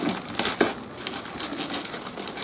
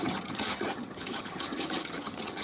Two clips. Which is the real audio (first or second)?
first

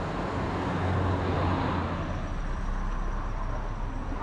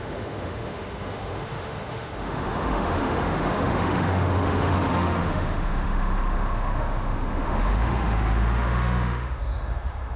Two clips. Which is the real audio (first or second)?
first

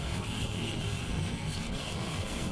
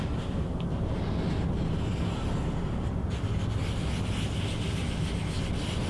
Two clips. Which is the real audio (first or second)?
second